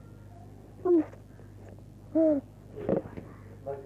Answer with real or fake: real